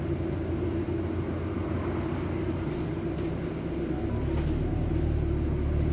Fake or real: real